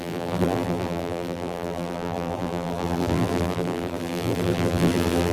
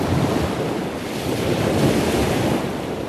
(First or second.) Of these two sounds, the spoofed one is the first